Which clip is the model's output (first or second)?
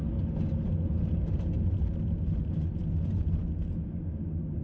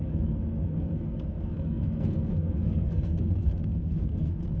second